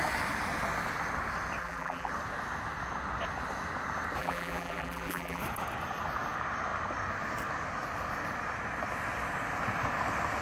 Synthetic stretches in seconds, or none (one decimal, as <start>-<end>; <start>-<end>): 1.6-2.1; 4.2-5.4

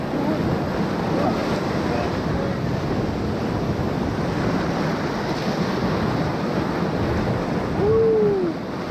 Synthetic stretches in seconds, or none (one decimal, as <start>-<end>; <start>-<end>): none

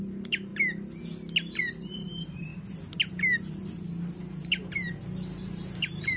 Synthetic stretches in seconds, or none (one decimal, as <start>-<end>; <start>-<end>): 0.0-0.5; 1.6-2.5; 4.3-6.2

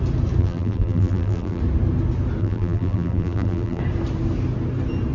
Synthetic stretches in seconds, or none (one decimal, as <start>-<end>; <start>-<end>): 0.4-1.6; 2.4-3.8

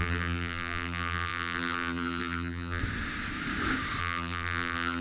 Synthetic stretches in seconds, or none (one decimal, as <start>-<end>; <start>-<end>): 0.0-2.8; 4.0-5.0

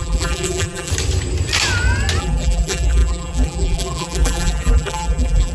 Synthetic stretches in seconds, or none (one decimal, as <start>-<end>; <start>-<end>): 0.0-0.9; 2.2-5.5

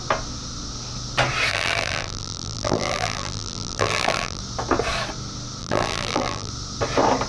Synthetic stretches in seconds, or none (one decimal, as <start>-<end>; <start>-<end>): 1.5-4.4; 5.6-6.5